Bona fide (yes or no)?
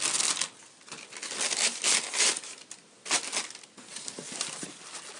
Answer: yes